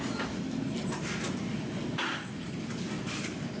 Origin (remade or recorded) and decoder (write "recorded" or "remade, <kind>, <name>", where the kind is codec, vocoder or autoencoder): recorded